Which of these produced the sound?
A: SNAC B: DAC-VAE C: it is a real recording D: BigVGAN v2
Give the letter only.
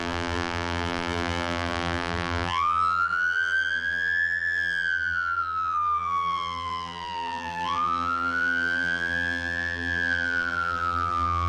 D